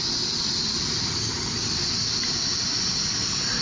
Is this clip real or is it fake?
real